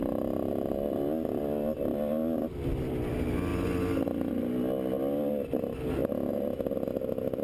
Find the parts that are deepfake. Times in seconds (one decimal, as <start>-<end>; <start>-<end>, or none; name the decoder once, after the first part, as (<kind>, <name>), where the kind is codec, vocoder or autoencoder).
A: none